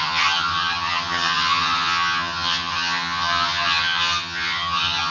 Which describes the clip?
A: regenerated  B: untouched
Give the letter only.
A